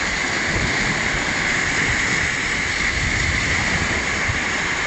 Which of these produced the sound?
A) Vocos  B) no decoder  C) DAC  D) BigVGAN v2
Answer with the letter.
B